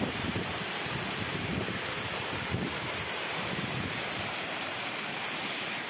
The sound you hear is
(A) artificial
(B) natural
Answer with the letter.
A